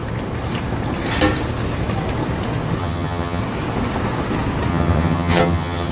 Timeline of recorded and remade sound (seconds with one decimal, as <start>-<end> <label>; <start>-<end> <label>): 0.0-2.8 recorded; 2.8-3.4 remade; 3.4-4.7 recorded; 4.7-5.9 remade